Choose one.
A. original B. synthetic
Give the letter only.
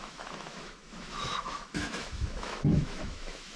B